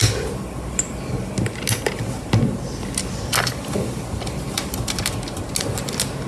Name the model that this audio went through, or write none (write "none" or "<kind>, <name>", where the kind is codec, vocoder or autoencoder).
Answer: none